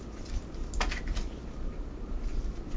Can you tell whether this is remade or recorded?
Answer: recorded